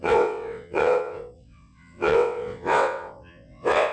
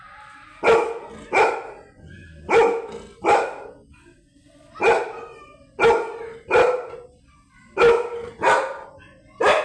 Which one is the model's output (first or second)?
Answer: first